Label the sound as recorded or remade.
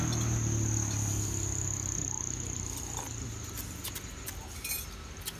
recorded